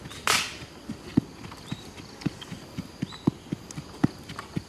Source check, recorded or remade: recorded